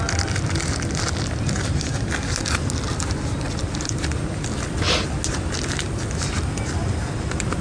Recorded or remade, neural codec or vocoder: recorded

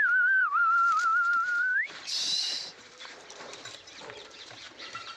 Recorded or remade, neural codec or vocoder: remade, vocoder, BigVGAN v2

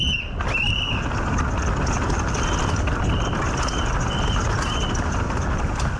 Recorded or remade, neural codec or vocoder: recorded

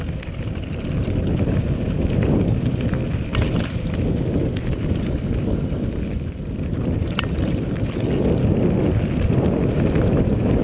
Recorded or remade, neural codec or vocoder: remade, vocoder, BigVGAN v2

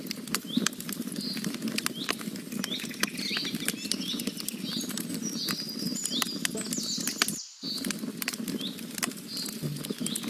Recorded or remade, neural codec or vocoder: recorded